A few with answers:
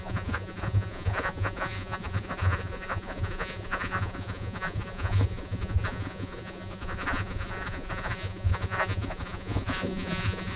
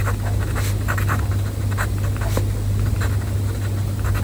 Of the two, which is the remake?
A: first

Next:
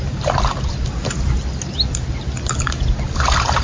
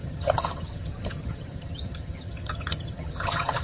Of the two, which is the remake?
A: second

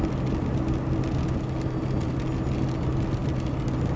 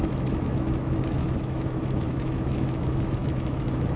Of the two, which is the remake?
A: second